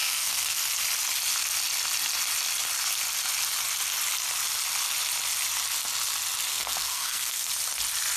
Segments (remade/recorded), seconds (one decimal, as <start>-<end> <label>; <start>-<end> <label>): 0.0-0.6 remade; 0.6-6.5 recorded; 6.5-7.5 remade; 7.5-8.2 recorded